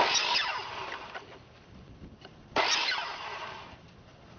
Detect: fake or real real